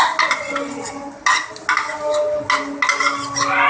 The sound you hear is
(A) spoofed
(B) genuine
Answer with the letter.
B